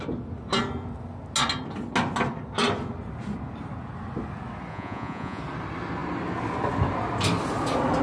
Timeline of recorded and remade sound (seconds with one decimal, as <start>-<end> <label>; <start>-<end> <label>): 0.0-4.7 recorded; 4.7-5.4 remade; 5.4-8.0 recorded